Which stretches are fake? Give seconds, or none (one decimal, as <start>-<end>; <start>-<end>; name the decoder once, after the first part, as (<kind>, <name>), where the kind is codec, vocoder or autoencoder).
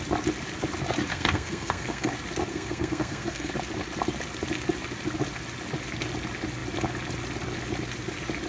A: 1.1-2.1 (codec, SNAC); 2.5-3.5